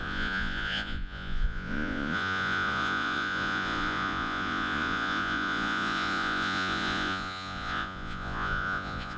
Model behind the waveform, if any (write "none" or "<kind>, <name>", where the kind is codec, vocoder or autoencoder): vocoder, Vocos